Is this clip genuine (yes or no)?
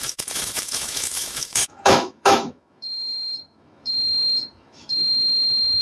no